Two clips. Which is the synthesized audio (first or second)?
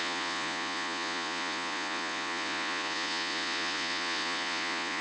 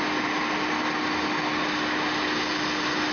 first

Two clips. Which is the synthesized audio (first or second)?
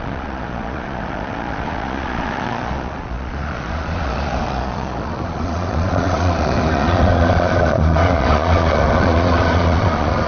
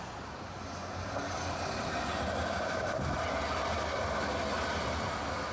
first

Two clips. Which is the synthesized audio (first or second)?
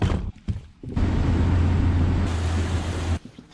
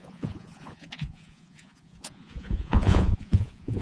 second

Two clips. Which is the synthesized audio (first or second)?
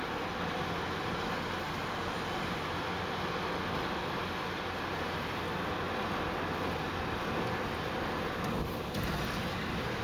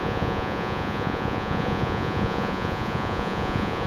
second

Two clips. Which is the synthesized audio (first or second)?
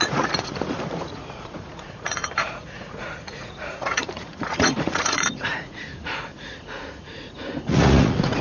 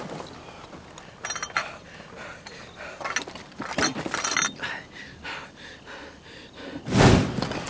first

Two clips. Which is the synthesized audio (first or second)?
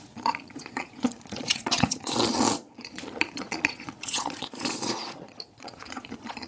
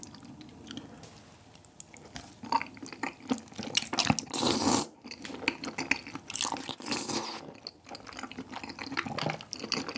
first